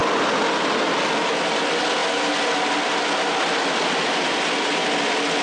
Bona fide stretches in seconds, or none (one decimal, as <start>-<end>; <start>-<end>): 0.0-5.4